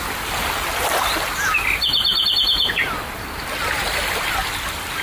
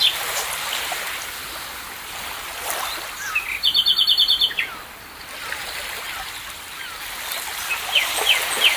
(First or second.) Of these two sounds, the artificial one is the second